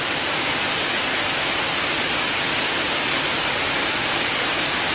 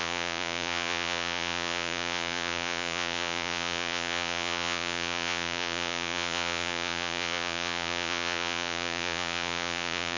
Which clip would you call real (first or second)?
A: first